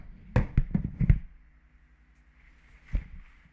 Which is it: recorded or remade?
recorded